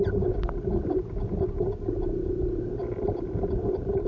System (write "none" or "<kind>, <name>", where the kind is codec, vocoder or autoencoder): none